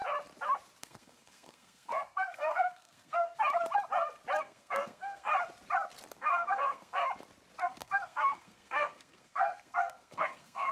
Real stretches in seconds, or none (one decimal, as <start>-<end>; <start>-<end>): 0.0-0.8; 3.3-4.4; 5.3-6.2; 7.0-7.6